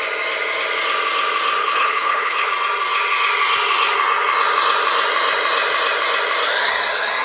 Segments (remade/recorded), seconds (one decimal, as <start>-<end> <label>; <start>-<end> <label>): 0.0-1.6 recorded; 1.6-2.5 remade; 2.5-7.2 recorded